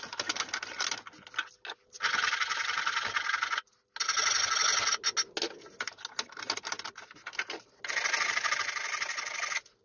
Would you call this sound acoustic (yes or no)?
yes